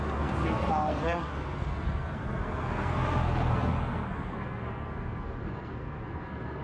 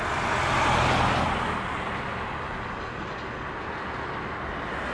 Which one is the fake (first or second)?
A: first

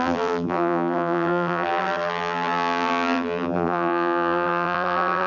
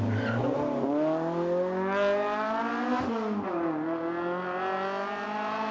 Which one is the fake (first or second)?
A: first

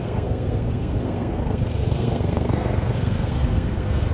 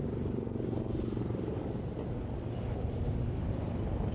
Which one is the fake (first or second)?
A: first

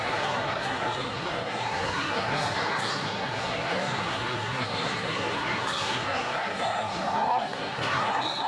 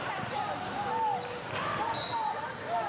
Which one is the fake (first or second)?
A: first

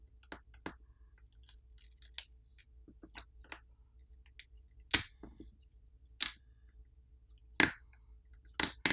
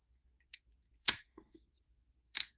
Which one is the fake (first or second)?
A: second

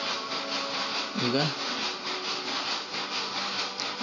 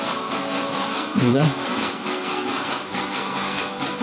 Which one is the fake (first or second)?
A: second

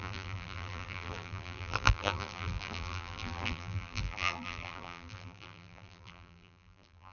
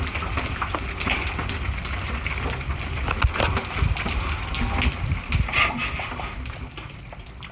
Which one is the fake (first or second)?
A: first